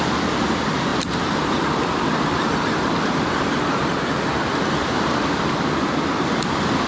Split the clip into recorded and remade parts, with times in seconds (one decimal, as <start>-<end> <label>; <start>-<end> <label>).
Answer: 0.0-0.9 recorded; 0.9-1.5 remade; 1.5-4.8 recorded; 4.8-5.3 remade; 5.3-6.9 recorded